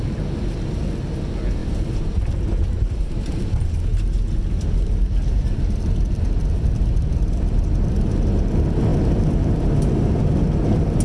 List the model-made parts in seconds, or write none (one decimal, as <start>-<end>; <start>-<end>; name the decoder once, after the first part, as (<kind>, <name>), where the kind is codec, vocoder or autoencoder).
1.6-2.2 (vocoder, BigVGAN v2)